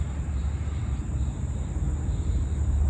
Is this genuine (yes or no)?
yes